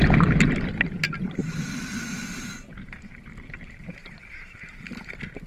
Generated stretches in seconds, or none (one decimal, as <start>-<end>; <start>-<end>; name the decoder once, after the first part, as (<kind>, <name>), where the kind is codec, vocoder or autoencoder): 1.4-4.7 (vocoder, BigVGAN v2)

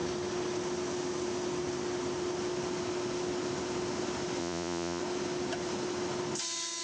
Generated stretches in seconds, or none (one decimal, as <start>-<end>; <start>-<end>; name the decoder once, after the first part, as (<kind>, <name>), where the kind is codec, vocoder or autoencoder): 4.4-5.0 (vocoder, Vocos)

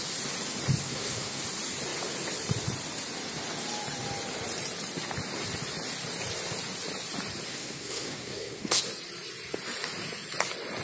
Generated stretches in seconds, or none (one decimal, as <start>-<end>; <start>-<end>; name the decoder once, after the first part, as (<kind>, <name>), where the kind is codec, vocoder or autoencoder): 0.8-1.4 (codec, SNAC); 7.5-8.8

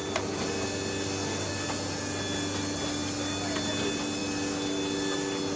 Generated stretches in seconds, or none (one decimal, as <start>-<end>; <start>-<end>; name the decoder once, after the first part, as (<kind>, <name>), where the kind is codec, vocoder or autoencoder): none

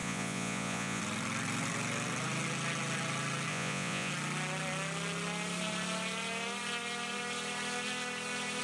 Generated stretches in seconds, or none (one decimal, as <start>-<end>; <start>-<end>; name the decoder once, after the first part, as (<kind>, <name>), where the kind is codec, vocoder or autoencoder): 0.0-1.0 (vocoder, Vocos); 3.5-4.1

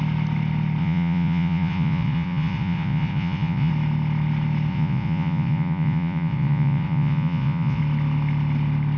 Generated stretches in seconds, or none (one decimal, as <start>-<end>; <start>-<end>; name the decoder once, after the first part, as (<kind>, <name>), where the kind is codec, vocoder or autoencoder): 0.8-3.7 (vocoder, Vocos); 4.7-7.8

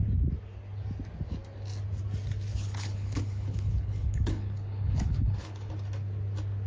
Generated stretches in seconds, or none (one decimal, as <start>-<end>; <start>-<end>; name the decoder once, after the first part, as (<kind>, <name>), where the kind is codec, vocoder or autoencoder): 2.5-5.7 (codec, HILCodec)

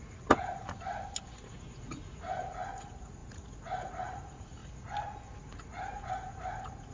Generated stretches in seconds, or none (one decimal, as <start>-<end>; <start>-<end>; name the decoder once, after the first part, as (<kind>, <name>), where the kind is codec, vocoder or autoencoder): 0.0-0.6 (vocoder, Vocos); 1.4-4.6; 5.4-6.9